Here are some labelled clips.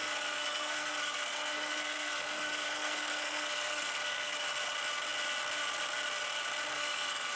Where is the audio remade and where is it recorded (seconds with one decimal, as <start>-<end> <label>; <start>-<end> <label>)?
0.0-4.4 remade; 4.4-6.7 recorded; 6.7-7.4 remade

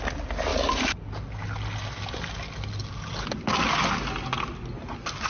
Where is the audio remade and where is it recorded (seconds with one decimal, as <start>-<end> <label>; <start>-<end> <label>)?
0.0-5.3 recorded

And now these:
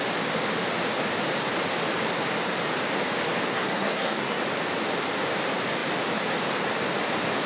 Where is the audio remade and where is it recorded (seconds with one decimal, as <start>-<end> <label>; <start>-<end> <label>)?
0.0-3.5 recorded; 3.5-4.4 remade; 4.4-7.5 recorded

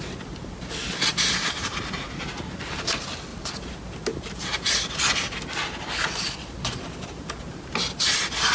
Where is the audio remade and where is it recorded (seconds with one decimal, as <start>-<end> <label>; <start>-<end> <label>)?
0.0-1.1 recorded; 1.1-2.3 remade; 2.3-8.5 recorded

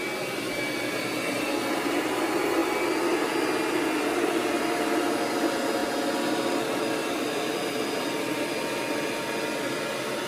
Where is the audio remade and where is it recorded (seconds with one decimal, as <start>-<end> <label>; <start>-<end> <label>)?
0.0-10.3 recorded

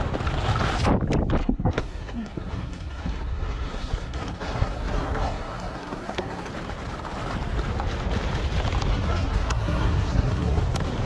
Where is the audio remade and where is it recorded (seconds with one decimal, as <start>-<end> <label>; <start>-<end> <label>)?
0.0-1.4 recorded; 1.4-6.5 remade; 6.5-8.9 recorded; 8.9-10.6 remade; 10.6-11.1 recorded

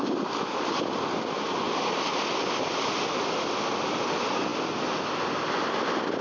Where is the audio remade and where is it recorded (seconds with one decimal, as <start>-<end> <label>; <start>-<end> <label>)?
0.0-6.2 recorded

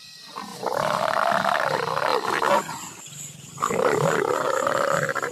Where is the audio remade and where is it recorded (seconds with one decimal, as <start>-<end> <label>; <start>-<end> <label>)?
0.0-5.3 recorded